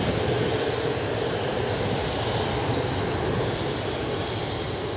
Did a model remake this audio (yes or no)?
no